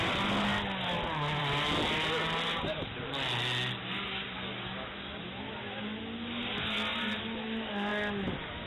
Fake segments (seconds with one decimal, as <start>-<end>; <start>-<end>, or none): none

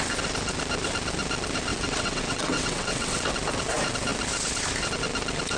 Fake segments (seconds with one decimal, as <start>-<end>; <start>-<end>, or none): 1.7-3.3

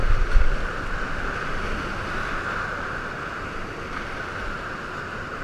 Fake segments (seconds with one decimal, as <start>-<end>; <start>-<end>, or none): none

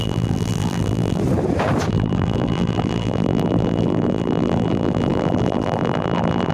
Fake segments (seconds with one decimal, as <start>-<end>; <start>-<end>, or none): 0.0-1.2; 1.9-6.5

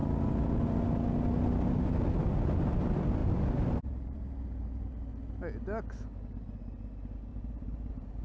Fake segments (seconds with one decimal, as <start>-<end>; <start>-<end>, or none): 3.2-4.9; 7.3-8.2

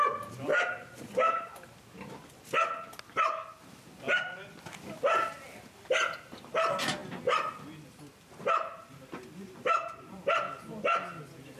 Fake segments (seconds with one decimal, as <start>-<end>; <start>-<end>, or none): 0.5-1.5; 8.7-10.4

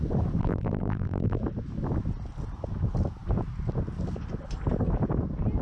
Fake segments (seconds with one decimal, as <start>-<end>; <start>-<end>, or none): 0.4-1.4